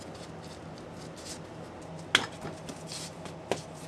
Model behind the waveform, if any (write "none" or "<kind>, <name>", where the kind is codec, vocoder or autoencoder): none